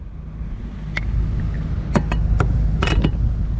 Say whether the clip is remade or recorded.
recorded